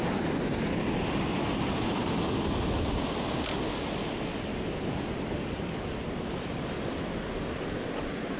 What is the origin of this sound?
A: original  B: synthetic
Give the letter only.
A